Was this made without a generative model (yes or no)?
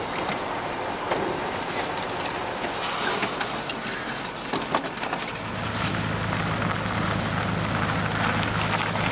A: yes